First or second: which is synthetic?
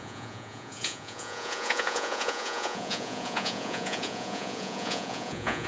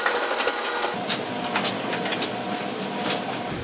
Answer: first